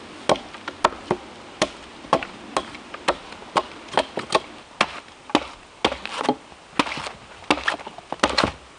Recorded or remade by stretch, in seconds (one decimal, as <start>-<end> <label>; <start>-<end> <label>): 0.0-8.8 recorded